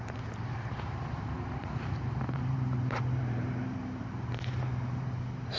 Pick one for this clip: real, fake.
fake